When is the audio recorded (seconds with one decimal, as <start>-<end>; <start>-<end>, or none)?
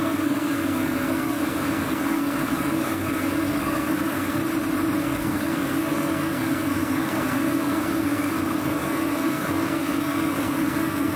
4.4-5.0